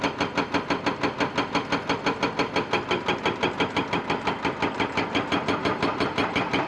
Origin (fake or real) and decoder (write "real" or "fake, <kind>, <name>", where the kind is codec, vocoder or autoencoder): real